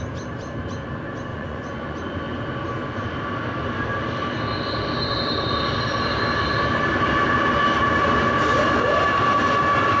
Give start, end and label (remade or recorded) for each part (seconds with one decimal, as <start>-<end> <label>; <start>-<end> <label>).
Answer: 0.0-1.3 recorded; 1.3-2.2 remade; 2.2-10.0 recorded